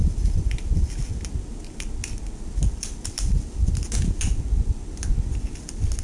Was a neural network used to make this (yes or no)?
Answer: no